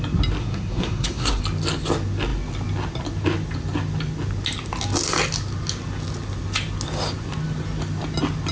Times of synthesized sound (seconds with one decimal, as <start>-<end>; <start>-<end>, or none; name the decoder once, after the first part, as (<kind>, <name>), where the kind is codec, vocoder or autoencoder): 0.4-1.4 (codec, SNAC)